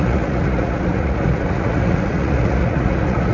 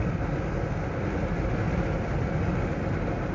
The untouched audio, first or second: second